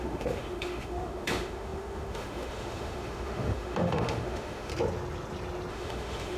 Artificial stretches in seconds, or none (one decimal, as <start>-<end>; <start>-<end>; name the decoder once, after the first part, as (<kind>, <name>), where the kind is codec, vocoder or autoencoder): 0.0-4.7 (autoencoder, DAC-VAE); 5.7-6.4